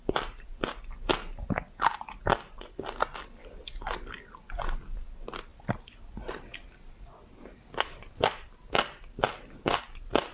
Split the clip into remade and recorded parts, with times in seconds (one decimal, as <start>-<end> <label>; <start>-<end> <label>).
0.0-0.5 remade; 0.5-3.1 recorded; 3.1-10.3 remade